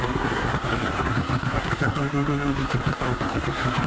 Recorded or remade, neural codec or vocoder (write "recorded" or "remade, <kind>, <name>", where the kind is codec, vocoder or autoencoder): remade, codec, SNAC